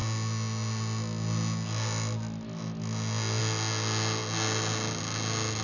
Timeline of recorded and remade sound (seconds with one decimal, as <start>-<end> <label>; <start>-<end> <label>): 0.0-5.6 recorded